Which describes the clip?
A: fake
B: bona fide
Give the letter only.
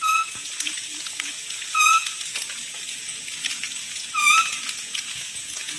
A